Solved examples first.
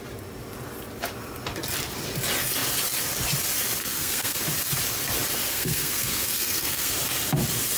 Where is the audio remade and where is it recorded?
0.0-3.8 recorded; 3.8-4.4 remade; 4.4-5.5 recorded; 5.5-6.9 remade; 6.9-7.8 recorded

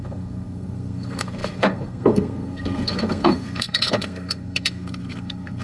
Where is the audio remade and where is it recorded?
0.0-5.6 remade

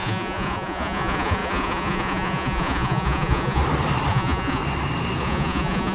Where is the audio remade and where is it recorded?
0.0-3.6 remade; 3.6-4.1 recorded; 4.1-4.6 remade; 4.6-5.2 recorded; 5.2-5.9 remade

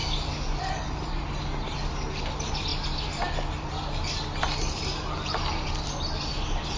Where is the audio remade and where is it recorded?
0.0-6.8 recorded

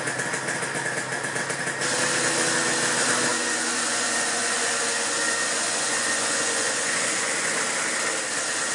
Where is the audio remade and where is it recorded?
0.0-3.3 recorded; 3.3-7.6 remade; 7.6-8.7 recorded

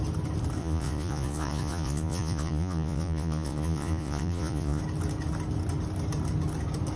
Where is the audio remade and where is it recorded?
0.0-0.6 recorded; 0.6-4.8 remade; 4.8-7.0 recorded

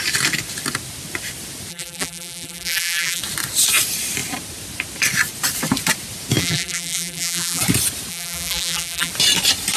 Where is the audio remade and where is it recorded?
0.0-1.7 recorded; 1.7-3.2 remade; 3.2-6.4 recorded; 6.4-7.6 remade; 7.6-8.1 recorded; 8.1-9.1 remade; 9.1-9.8 recorded